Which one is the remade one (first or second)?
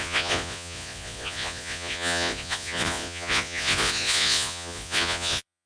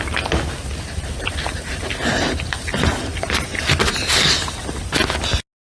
first